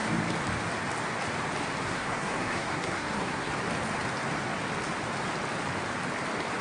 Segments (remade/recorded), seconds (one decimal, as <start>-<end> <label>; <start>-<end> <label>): 0.0-1.8 recorded; 1.8-3.5 remade; 3.5-6.6 recorded